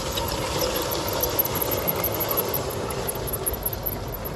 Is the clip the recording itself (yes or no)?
yes